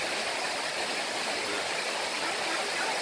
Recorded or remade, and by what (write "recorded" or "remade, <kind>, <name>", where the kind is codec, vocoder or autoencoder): recorded